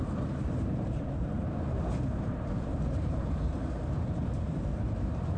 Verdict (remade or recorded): remade